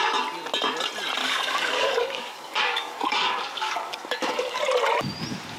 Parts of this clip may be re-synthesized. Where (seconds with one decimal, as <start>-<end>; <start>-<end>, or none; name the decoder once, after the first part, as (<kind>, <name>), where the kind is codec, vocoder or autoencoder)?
1.2-4.6 (codec, DAC)

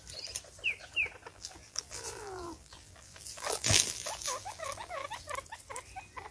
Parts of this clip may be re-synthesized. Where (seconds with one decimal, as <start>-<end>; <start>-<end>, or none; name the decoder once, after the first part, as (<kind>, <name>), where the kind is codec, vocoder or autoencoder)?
1.3-5.1 (vocoder, BigVGAN v2)

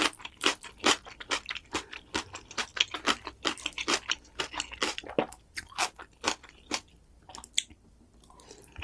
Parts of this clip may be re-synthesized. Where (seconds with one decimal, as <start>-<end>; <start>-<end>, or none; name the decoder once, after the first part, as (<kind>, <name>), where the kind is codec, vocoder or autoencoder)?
0.0-2.7 (vocoder, BigVGAN v2); 3.4-7.3; 7.9-8.8

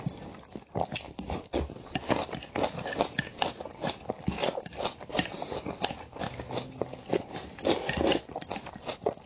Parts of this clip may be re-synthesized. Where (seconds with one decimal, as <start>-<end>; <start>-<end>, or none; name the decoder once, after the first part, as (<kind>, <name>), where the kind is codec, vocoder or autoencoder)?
none

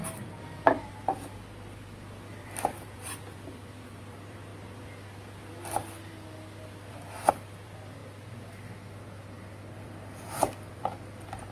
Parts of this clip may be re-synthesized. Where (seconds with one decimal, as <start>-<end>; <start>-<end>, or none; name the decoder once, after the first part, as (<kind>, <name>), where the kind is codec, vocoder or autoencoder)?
2.3-4.5 (vocoder, BigVGAN v2); 7.3-8.0; 9.8-11.5

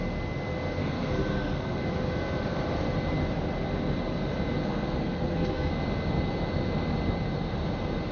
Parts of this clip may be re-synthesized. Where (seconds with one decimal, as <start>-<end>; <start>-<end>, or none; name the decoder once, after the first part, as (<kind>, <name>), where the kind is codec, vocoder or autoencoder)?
0.8-1.8 (codec, SNAC); 4.6-5.7